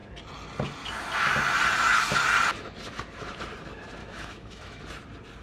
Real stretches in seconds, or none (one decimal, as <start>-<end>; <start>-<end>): 0.0-4.0; 4.8-5.4